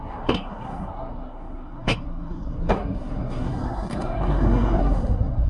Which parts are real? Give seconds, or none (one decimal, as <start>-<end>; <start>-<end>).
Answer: none